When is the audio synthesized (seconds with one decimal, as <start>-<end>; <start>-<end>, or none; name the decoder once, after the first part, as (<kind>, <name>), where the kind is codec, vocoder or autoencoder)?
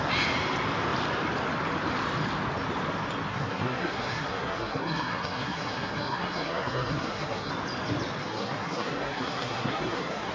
3.3-7.5 (codec, SNAC); 8.2-10.3